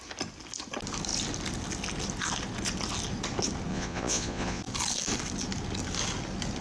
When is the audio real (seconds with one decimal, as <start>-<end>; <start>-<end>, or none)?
0.0-3.7; 4.6-6.6